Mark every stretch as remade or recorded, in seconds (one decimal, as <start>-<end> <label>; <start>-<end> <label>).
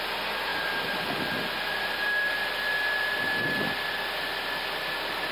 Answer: 0.0-5.3 recorded